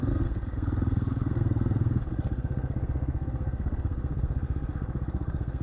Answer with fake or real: fake